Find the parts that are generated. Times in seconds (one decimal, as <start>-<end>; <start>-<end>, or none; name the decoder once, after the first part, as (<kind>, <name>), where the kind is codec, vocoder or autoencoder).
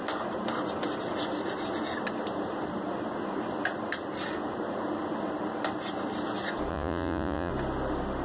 6.7-7.5 (vocoder, Vocos)